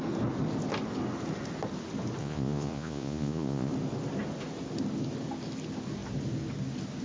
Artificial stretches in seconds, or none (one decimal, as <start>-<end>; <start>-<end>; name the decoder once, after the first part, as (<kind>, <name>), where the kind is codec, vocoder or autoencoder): 2.2-3.7 (vocoder, Vocos)